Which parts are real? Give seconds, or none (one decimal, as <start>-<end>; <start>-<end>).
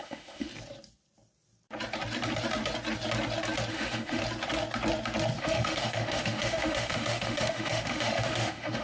0.5-3.7; 4.2-5.4